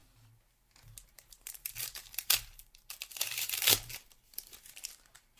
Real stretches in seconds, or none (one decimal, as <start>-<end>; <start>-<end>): 0.0-1.1